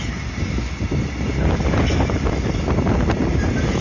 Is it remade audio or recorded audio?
recorded